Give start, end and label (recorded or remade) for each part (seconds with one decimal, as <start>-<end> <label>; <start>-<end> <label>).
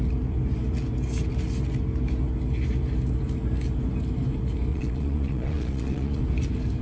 0.0-4.7 recorded; 4.7-6.2 remade; 6.2-6.8 recorded